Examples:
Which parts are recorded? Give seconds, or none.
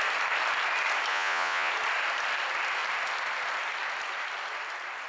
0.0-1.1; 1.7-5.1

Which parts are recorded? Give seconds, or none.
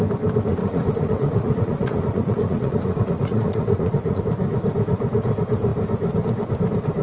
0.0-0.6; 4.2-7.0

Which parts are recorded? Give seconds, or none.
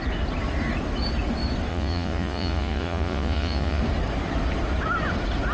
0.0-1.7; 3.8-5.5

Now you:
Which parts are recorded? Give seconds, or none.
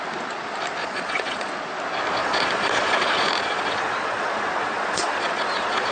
0.0-0.8; 1.5-2.2